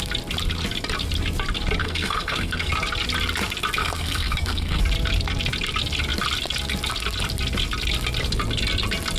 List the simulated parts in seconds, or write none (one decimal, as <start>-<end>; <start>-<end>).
1.8-2.7; 3.8-4.8